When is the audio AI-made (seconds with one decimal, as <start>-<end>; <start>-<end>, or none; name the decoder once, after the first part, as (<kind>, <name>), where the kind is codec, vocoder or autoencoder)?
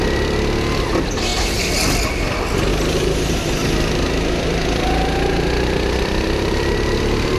2.7-7.4 (vocoder, BigVGAN v2)